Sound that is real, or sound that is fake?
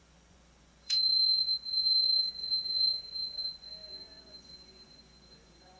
fake